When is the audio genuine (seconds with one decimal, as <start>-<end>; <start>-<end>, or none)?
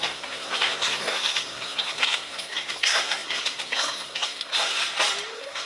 4.8-5.3